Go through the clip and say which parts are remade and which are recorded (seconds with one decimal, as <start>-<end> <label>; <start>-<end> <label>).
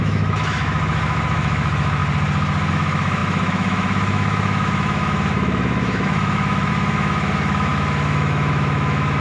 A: 0.0-2.0 remade; 2.0-2.7 recorded; 2.7-9.2 remade